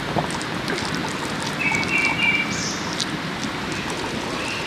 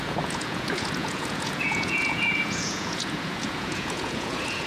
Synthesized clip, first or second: second